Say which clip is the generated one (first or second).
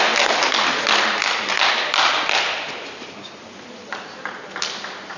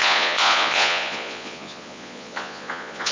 second